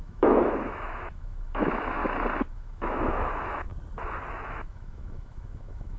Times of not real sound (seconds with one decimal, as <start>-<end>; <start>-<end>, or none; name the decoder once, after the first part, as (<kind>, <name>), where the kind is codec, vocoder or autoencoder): 0.0-2.0 (autoencoder, DAC-VAE); 2.5-3.7; 4.3-6.0